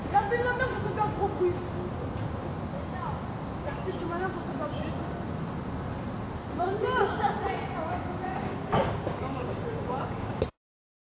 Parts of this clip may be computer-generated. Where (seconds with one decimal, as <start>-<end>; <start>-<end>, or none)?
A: 8.4-10.4